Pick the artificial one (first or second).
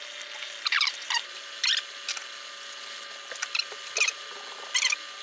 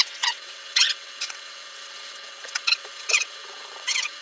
second